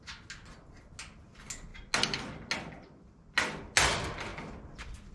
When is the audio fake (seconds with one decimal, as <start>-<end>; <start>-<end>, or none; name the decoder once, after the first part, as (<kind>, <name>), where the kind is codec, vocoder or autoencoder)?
none